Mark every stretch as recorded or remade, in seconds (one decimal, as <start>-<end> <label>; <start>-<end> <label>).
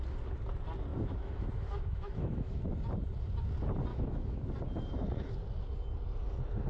0.0-0.9 recorded; 0.9-2.7 remade; 2.7-3.9 recorded; 3.9-4.5 remade; 4.5-6.7 recorded